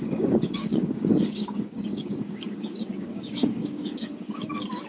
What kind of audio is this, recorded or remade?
remade